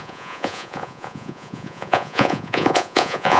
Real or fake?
fake